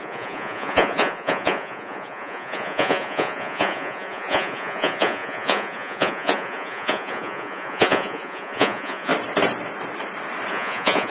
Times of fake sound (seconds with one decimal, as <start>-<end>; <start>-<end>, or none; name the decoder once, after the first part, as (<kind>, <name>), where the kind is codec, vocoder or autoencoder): 0.0-9.1 (vocoder, Vocos); 10.5-11.1